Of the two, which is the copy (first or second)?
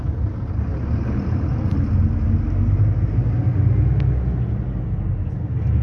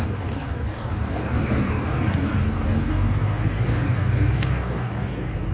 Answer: second